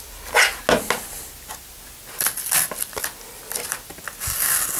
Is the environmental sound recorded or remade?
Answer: recorded